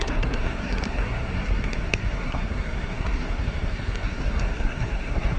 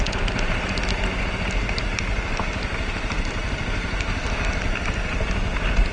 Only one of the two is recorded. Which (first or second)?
second